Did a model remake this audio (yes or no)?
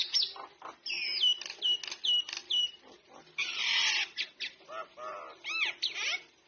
no